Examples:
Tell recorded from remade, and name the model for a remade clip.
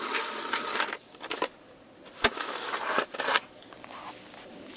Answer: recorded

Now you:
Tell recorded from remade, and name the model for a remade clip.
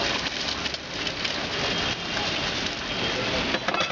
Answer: recorded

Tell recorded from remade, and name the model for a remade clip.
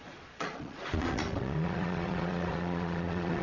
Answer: remade, vocoder, Vocos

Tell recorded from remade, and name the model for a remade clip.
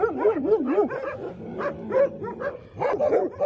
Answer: recorded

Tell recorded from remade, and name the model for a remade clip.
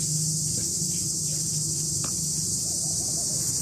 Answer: recorded